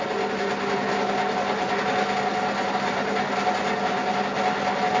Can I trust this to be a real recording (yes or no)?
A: yes